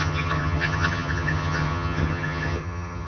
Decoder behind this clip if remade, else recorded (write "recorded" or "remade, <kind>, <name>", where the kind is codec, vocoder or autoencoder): remade, vocoder, HiFi-GAN